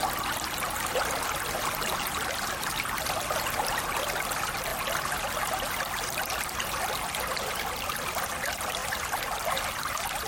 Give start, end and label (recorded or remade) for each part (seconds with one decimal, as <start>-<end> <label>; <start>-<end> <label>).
0.0-10.3 recorded